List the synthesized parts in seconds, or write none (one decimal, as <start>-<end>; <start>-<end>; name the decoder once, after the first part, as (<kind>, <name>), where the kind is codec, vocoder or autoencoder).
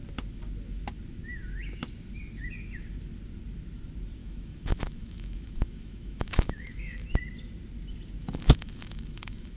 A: 4.2-7.0 (autoencoder, DAC-VAE); 8.2-9.6